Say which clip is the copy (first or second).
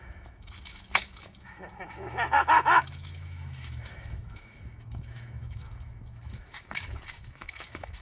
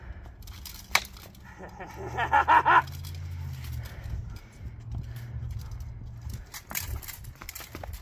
first